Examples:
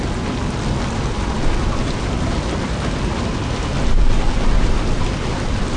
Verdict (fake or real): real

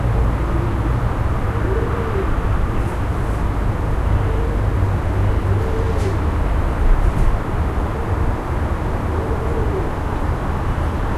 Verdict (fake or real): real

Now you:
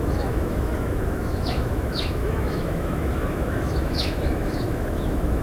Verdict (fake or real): fake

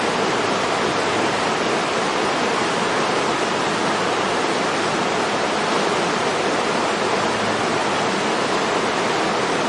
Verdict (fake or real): real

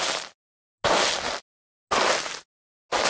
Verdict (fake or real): real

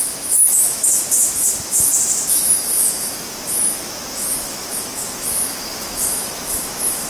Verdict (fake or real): fake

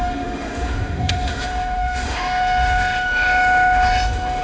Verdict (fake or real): fake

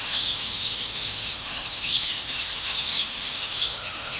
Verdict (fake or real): fake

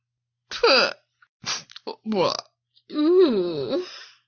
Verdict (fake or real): real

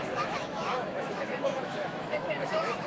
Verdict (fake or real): fake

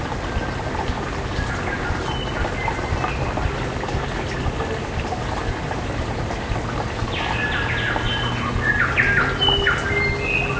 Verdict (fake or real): real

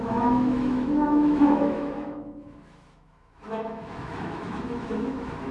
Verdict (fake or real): fake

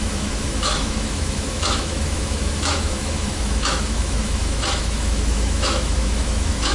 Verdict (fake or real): fake